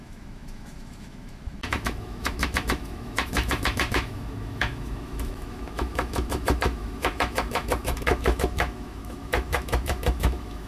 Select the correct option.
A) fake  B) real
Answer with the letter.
A